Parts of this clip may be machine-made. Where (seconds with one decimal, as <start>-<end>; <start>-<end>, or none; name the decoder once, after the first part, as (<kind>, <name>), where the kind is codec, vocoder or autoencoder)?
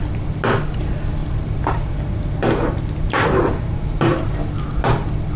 1.2-4.4 (vocoder, BigVGAN v2)